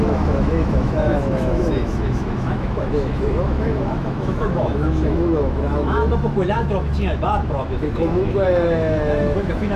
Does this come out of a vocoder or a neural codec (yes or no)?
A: yes